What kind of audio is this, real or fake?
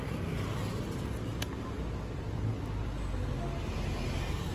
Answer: real